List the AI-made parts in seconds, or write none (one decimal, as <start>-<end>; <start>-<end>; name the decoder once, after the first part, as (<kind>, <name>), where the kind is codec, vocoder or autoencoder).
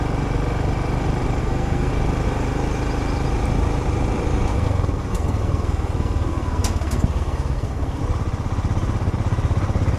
1.4-1.9 (codec, SNAC); 4.5-8.0